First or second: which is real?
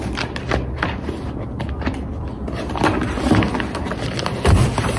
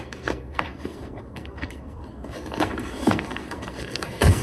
first